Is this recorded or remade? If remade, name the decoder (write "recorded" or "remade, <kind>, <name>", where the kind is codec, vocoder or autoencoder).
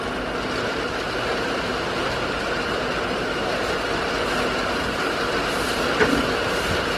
recorded